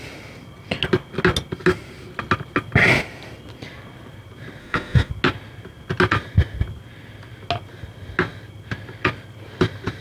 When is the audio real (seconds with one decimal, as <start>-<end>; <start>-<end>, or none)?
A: 0.0-4.6; 5.1-10.0